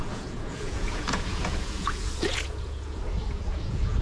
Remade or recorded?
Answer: remade